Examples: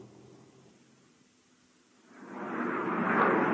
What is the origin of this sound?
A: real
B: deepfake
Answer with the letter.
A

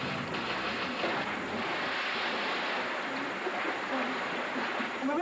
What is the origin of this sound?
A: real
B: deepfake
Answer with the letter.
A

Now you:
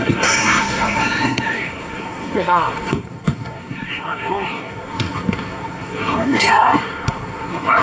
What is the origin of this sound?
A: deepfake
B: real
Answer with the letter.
A